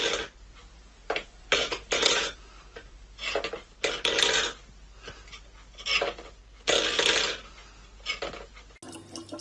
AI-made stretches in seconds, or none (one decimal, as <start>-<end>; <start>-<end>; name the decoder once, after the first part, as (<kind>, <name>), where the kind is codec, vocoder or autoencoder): 0.6-2.5 (vocoder, Vocos)